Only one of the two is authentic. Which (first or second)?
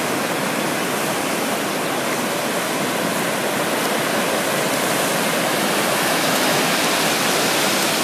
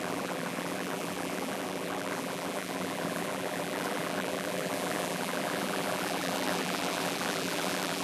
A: first